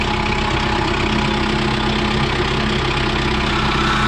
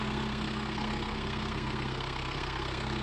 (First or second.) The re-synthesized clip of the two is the second